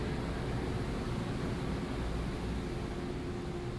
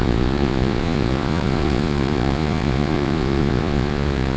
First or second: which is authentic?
first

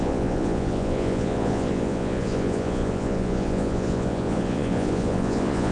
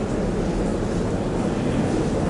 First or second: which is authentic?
second